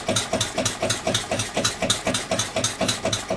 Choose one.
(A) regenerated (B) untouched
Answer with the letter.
B